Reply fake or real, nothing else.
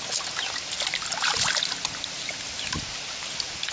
real